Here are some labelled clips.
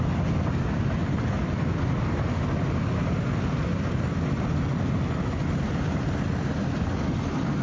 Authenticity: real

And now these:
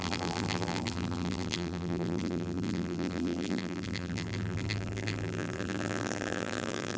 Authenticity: fake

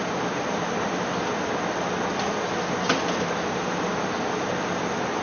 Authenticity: real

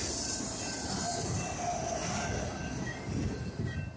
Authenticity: real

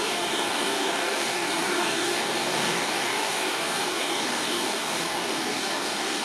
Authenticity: fake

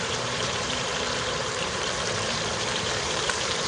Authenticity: fake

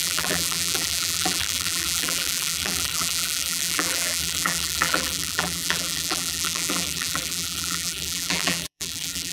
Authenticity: fake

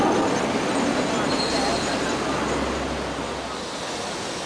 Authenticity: real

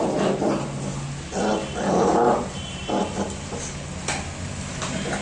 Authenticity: real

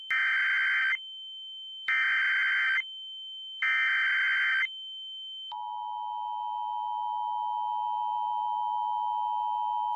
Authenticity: real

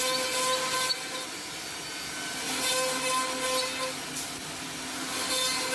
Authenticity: real